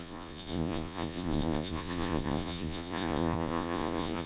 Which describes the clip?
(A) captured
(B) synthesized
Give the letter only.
B